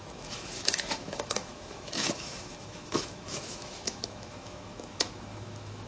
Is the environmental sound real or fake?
fake